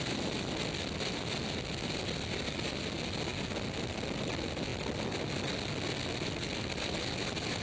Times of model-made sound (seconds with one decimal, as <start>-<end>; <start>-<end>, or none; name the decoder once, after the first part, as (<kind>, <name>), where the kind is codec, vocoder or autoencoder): none